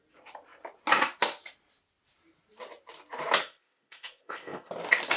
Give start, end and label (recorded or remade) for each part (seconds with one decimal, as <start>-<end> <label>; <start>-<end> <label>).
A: 0.0-3.4 recorded; 3.4-4.7 remade; 4.7-5.2 recorded